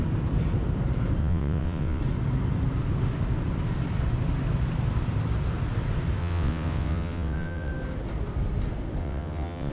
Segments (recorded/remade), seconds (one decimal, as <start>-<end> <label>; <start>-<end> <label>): 0.0-1.2 recorded; 1.2-2.0 remade; 2.0-6.2 recorded; 6.2-7.7 remade; 7.7-9.0 recorded; 9.0-9.7 remade